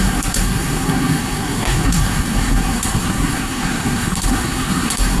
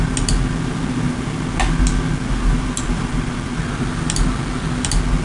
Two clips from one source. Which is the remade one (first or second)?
first